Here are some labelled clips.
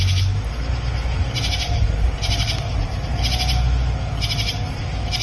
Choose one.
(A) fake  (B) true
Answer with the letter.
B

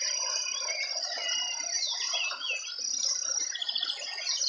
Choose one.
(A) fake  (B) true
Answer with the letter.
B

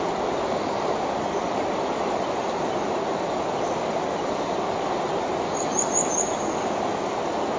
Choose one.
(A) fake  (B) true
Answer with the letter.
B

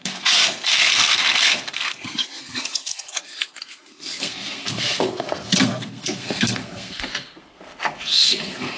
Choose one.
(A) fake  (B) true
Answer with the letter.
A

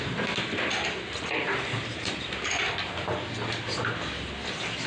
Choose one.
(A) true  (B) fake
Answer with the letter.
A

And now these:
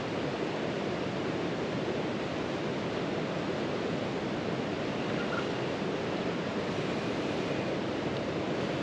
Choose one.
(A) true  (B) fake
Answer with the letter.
A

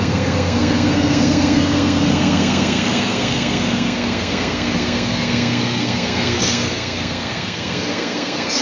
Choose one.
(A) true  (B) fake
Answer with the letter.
B